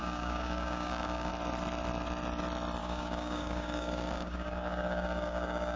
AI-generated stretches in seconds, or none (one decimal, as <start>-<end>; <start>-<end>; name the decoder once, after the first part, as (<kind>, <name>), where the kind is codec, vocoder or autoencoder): 0.0-1.3 (codec, DAC); 2.8-5.8